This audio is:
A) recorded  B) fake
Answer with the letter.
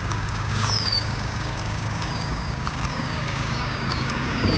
B